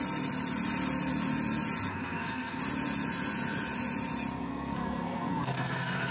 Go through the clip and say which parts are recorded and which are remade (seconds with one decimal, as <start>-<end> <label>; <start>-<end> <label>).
0.0-1.9 recorded; 1.9-2.6 remade; 2.6-4.5 recorded; 4.5-6.1 remade